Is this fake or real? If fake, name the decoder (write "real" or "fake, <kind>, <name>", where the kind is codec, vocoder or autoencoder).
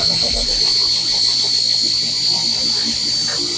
real